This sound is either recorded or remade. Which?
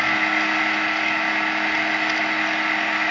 recorded